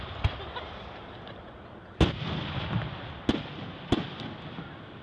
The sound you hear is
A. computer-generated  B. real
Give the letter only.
B